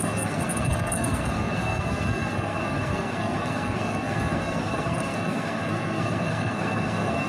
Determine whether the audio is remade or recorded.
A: remade